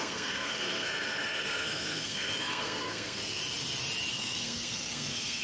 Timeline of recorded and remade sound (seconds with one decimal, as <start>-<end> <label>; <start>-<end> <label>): 0.0-3.4 remade; 3.4-4.1 recorded; 4.1-5.4 remade